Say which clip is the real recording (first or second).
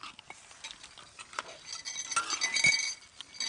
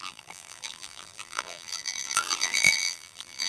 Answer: first